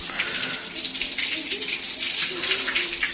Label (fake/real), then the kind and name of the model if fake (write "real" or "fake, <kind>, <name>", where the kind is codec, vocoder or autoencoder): real